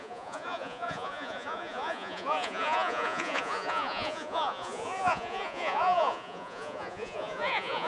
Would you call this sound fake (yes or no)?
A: yes